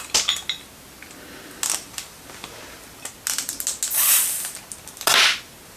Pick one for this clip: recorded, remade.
recorded